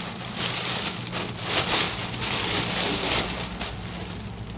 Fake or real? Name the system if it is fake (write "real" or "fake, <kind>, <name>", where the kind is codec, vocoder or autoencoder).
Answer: real